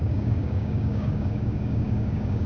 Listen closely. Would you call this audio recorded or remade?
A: remade